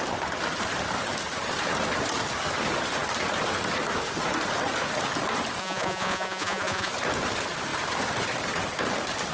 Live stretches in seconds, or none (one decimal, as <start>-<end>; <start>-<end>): 0.0-5.6; 6.9-9.3